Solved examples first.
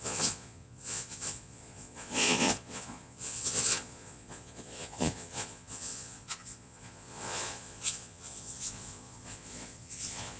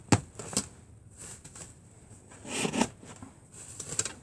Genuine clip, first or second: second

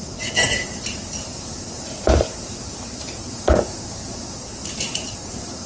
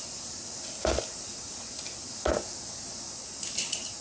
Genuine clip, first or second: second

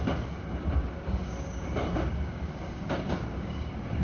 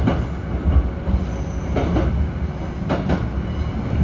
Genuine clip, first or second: second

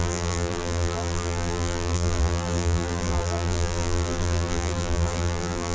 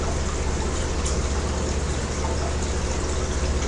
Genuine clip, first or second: second